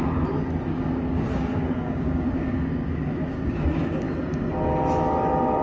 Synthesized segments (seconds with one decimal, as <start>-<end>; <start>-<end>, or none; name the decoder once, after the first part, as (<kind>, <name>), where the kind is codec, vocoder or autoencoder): 0.7-4.1 (codec, DAC)